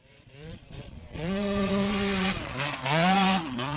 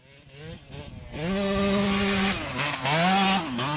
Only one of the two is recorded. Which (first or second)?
second